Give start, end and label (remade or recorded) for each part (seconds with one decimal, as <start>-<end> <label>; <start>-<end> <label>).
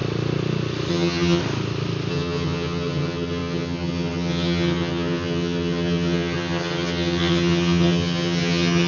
0.0-0.9 recorded; 0.9-1.4 remade; 1.4-2.1 recorded; 2.1-8.9 remade